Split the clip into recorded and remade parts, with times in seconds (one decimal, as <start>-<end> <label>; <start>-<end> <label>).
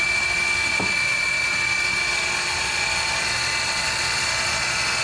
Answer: 0.0-5.0 recorded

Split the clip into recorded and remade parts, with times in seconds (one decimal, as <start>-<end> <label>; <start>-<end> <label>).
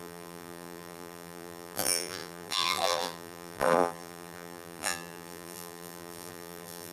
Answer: 0.0-6.9 remade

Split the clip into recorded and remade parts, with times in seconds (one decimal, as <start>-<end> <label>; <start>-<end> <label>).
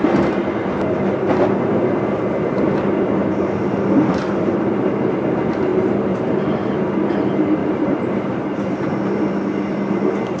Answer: 0.0-5.7 recorded; 5.7-6.3 remade; 6.3-7.6 recorded; 7.6-9.2 remade; 9.2-10.4 recorded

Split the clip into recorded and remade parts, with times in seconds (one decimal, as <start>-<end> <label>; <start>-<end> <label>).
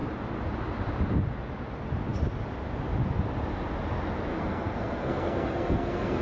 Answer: 0.0-4.3 recorded; 4.3-6.2 remade